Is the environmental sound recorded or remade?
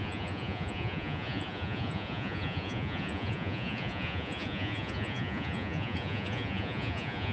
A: remade